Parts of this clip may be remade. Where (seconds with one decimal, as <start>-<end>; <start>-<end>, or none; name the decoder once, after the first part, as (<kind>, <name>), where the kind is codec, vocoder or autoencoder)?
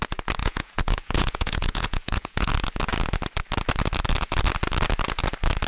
0.4-2.5 (vocoder, Vocos)